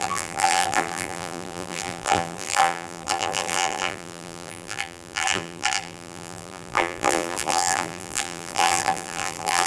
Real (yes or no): no